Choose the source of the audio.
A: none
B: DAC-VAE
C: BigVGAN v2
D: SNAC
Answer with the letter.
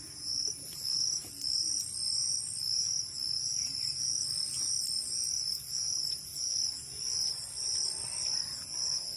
A